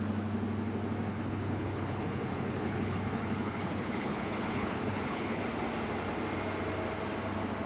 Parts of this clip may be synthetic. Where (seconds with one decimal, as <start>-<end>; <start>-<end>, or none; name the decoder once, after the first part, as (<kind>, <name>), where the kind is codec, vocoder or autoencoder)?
1.1-5.4 (codec, HILCodec)